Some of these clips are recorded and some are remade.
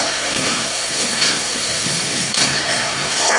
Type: remade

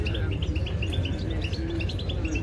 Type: recorded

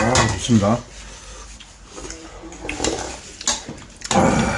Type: recorded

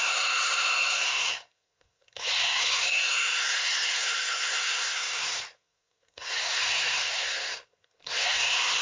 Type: remade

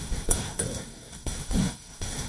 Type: remade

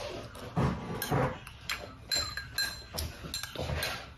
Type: recorded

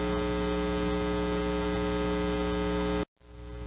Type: recorded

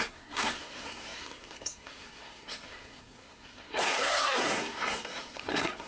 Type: remade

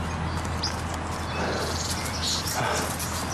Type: recorded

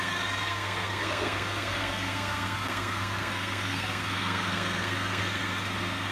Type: remade